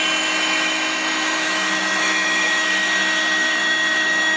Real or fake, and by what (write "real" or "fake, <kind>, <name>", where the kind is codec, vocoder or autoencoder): fake, autoencoder, DAC-VAE